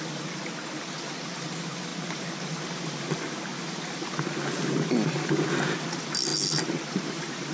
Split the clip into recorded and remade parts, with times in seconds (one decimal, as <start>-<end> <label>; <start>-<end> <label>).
0.0-7.5 recorded